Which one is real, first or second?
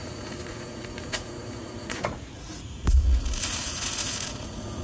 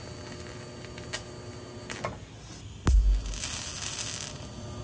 second